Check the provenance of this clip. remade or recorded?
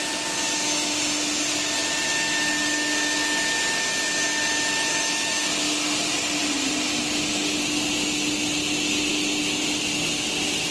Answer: recorded